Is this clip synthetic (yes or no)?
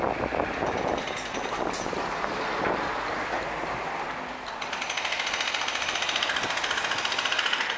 no